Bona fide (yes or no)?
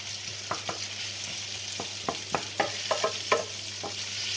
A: yes